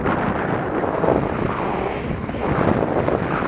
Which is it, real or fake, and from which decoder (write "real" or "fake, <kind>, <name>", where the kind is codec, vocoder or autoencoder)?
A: real